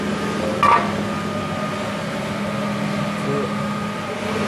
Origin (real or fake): real